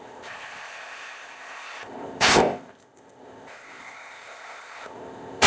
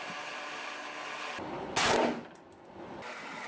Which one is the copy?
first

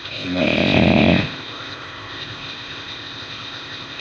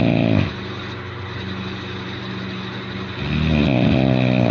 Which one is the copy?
first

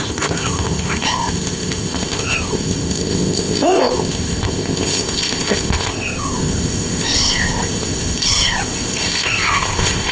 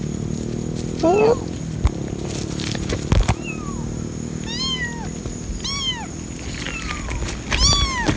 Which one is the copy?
first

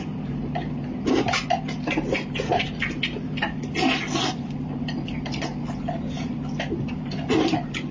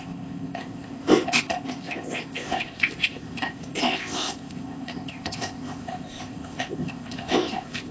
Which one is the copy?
second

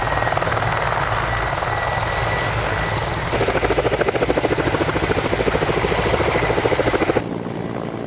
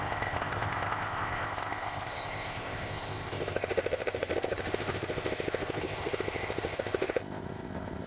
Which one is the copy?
second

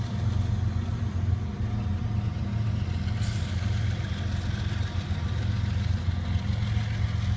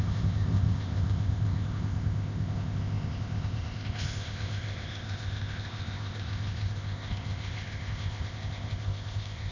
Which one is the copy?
second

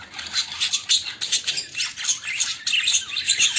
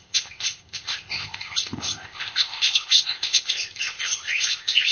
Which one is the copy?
second